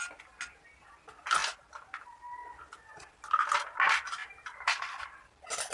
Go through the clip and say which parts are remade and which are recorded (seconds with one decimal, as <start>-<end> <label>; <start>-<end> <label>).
0.0-4.2 recorded; 4.2-5.0 remade; 5.0-5.7 recorded